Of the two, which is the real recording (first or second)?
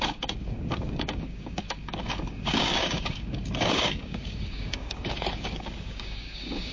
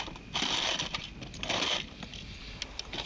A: second